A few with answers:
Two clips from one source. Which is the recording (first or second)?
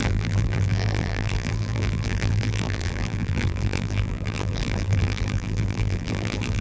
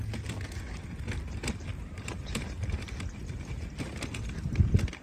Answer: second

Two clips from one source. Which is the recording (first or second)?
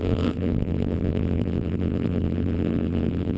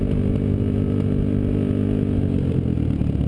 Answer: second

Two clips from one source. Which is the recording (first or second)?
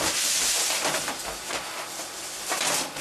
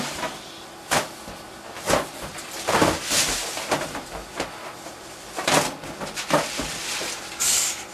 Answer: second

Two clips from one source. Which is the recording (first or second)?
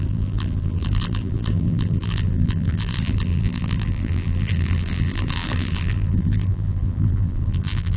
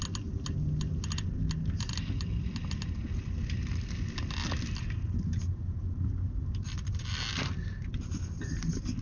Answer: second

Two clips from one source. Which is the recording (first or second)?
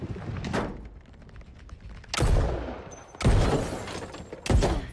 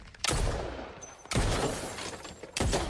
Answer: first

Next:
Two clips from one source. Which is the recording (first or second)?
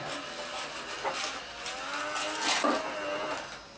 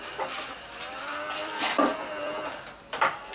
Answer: first